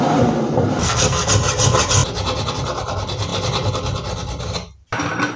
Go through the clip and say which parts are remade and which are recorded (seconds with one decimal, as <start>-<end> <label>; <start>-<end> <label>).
0.0-0.8 recorded; 0.8-1.3 remade; 1.3-5.4 recorded